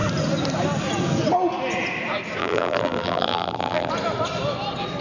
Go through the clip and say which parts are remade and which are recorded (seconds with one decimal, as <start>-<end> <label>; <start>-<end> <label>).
0.0-2.4 recorded; 2.4-3.9 remade; 3.9-5.0 recorded